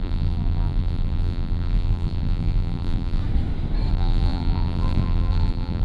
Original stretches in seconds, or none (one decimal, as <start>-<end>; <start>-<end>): 3.2-3.9